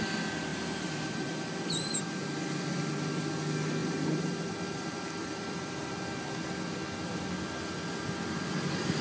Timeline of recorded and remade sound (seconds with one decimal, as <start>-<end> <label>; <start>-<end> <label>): 0.0-0.5 recorded; 0.5-2.0 remade; 2.0-3.8 recorded; 3.8-5.9 remade; 5.9-9.0 recorded